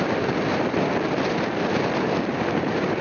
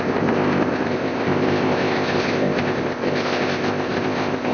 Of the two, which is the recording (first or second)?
first